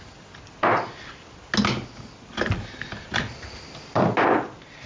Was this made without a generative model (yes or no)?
yes